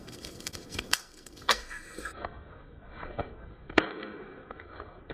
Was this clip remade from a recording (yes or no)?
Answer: yes